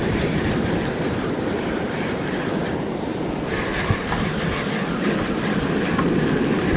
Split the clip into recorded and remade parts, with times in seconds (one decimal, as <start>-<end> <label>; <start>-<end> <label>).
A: 0.0-6.8 recorded